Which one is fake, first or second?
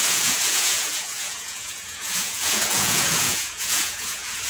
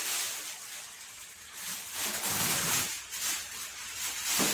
first